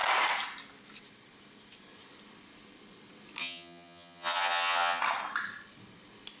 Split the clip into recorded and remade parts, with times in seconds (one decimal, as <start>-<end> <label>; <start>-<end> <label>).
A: 0.0-3.4 recorded; 3.4-5.0 remade; 5.0-6.4 recorded